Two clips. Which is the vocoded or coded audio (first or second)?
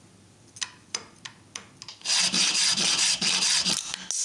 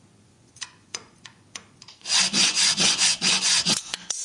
second